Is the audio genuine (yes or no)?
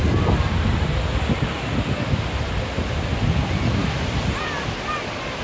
yes